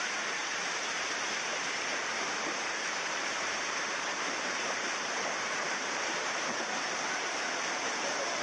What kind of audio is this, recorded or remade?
remade